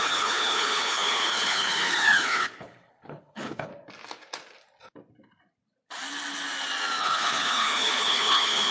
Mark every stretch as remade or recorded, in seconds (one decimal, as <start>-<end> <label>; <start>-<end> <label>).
0.0-3.7 remade; 3.7-7.0 recorded; 7.0-8.7 remade